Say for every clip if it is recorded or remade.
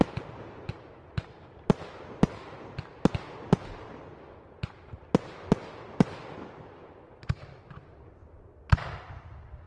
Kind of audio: recorded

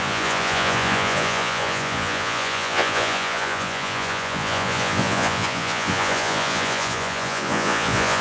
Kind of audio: remade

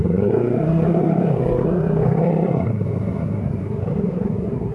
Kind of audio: remade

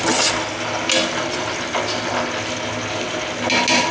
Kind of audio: recorded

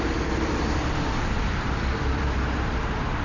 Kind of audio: recorded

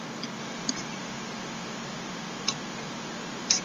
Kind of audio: recorded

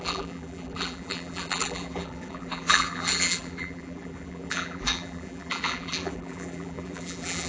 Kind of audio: remade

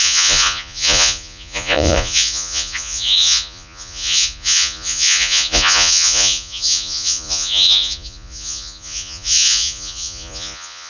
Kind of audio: remade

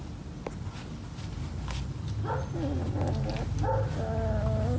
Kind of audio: recorded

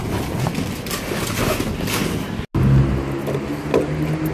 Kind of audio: recorded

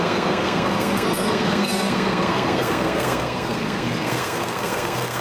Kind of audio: remade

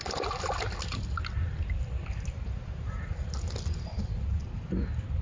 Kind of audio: recorded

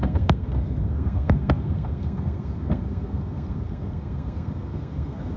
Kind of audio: remade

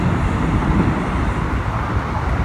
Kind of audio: recorded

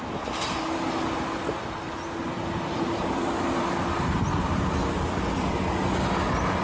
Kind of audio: recorded